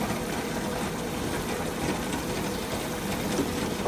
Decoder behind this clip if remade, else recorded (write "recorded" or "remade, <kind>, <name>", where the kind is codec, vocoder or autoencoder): recorded